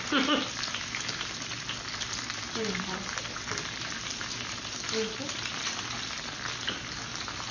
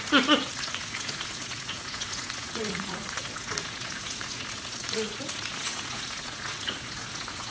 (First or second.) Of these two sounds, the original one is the first